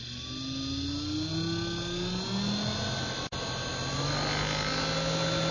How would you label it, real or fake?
real